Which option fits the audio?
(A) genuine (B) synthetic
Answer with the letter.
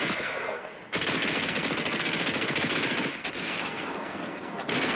B